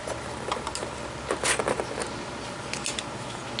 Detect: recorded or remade recorded